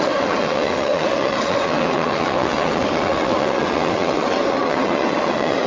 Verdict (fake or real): fake